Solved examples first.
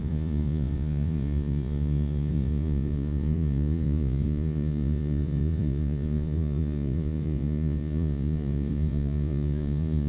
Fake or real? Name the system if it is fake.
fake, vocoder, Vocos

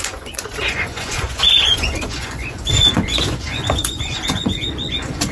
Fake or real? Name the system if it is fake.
fake, vocoder, Vocos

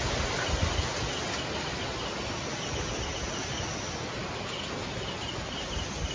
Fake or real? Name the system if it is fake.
real